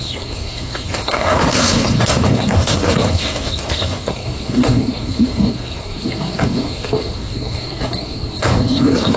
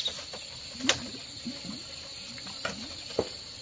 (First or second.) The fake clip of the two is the first